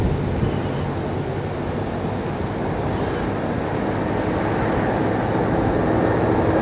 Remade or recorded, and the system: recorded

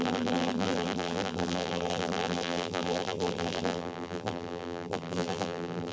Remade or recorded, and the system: remade, vocoder, BigVGAN v2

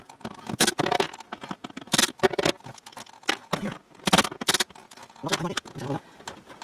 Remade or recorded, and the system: recorded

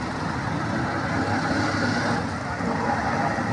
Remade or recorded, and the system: recorded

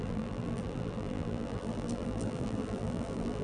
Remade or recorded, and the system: remade, vocoder, BigVGAN v2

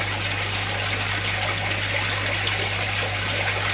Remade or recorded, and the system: recorded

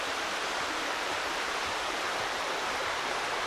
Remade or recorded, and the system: remade, vocoder, BigVGAN v2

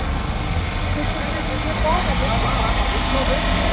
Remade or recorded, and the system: recorded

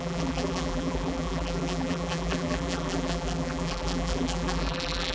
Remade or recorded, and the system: remade, vocoder, BigVGAN v2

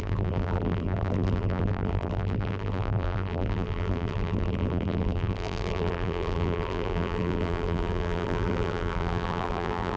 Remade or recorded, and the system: remade, vocoder, BigVGAN v2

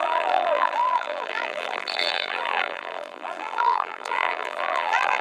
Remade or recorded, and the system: remade, vocoder, BigVGAN v2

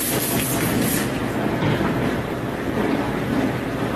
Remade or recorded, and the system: recorded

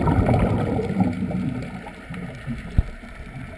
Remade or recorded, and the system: remade, vocoder, BigVGAN v2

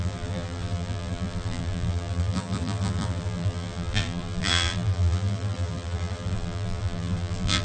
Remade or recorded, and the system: remade, vocoder, BigVGAN v2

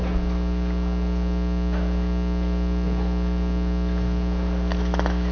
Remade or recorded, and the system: recorded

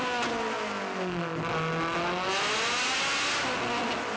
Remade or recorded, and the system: recorded